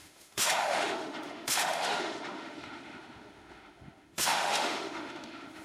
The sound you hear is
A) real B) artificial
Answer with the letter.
B